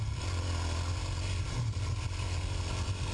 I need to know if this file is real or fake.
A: real